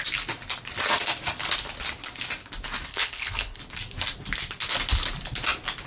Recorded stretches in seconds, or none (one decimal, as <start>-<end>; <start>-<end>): 0.0-2.9; 3.6-5.9